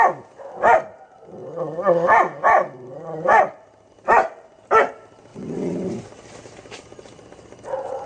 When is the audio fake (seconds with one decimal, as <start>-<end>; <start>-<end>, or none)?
5.3-5.9